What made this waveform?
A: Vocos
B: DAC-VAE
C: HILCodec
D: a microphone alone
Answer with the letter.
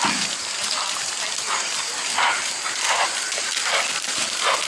D